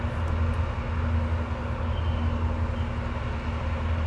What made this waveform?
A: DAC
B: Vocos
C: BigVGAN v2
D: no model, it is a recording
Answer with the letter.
D